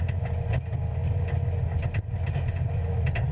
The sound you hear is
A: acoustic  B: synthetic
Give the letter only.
A